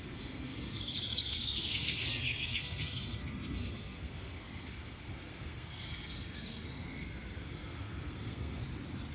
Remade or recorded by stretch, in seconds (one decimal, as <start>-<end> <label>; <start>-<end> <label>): 0.0-8.6 remade; 8.6-9.1 recorded